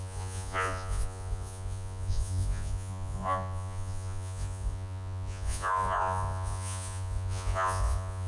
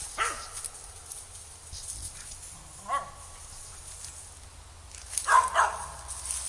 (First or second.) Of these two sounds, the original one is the second